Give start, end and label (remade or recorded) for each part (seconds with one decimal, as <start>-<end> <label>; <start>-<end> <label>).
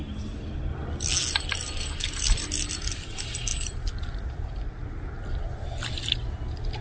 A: 0.0-6.8 recorded